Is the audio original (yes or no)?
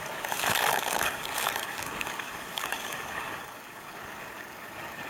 no